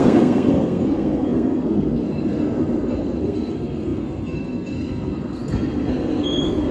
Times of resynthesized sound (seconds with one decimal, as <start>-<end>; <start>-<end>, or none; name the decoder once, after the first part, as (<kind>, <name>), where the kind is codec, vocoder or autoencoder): 0.0-6.7 (codec, SNAC)